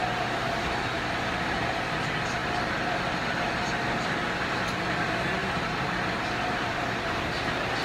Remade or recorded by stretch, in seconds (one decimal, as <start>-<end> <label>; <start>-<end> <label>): 0.0-7.8 recorded